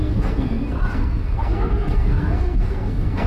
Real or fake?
fake